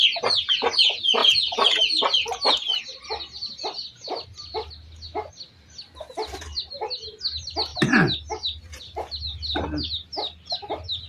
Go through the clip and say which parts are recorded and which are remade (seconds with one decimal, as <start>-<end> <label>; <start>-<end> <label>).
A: 0.0-11.1 recorded